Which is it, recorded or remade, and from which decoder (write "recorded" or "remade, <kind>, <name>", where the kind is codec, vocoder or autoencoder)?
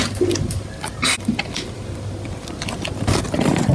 recorded